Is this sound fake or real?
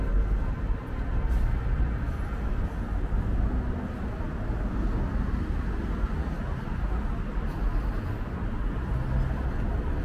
real